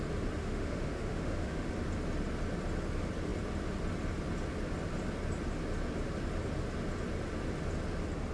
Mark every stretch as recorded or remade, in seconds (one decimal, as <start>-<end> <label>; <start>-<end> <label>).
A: 0.0-0.4 recorded; 0.4-1.7 remade; 1.7-8.3 recorded